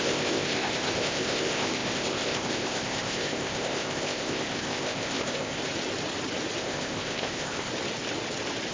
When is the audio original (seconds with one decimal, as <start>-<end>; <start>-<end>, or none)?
5.6-6.6; 7.7-8.7